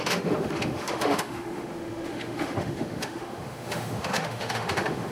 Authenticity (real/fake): fake